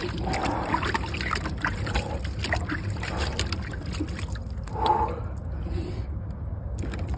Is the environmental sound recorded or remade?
recorded